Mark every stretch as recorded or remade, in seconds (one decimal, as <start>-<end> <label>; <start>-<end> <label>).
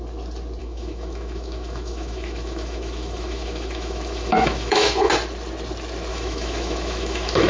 0.0-0.6 recorded; 0.6-5.1 remade; 5.1-6.1 recorded; 6.1-7.5 remade